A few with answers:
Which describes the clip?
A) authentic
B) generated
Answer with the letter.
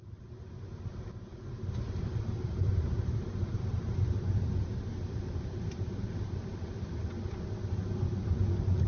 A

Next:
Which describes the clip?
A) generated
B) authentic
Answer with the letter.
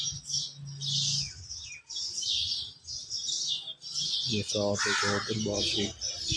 B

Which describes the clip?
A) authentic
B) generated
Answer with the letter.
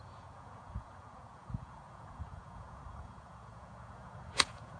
B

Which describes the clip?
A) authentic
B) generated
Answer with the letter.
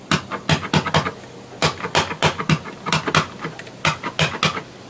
A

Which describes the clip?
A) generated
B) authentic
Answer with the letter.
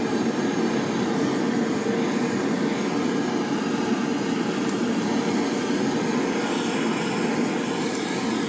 B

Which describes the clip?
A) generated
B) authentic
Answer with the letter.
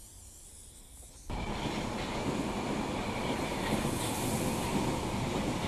B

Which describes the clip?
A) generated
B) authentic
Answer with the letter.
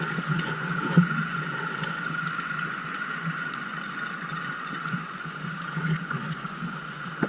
A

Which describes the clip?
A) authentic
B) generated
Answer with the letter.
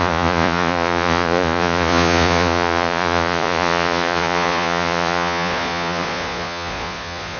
B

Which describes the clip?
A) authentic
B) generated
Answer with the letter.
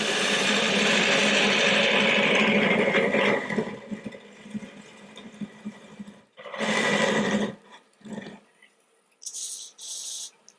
A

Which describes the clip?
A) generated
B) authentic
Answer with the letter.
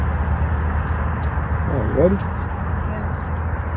B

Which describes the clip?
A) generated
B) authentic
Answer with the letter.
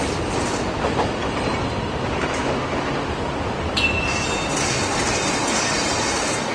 B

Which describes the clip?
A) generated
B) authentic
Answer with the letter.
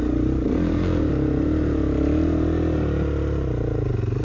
B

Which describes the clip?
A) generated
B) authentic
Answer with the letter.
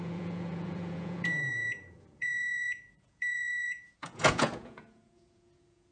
A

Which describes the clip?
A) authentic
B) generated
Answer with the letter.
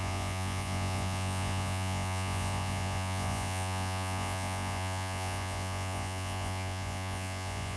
B